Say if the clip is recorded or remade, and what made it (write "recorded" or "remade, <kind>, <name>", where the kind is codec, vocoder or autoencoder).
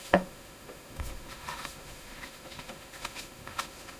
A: remade, autoencoder, DAC-VAE